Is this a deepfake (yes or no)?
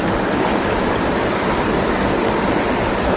no